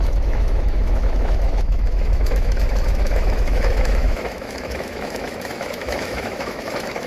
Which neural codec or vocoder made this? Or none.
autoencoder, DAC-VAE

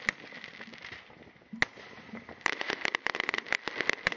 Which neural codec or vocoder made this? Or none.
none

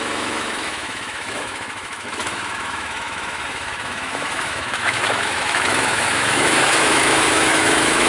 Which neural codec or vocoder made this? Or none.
autoencoder, DAC-VAE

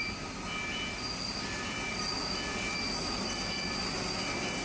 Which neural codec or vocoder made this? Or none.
none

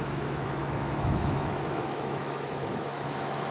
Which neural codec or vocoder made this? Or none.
autoencoder, DAC-VAE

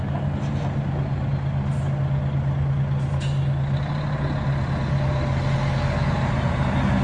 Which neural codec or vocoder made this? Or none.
none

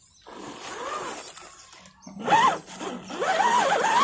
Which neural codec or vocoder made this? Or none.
none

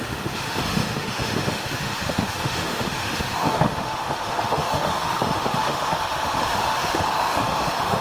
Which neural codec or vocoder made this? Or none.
autoencoder, DAC-VAE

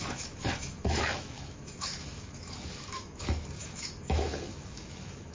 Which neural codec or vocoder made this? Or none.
autoencoder, DAC-VAE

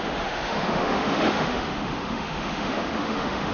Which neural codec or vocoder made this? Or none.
autoencoder, DAC-VAE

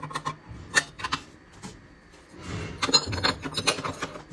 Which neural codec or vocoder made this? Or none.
none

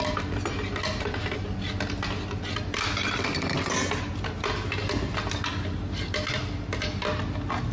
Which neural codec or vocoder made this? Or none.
none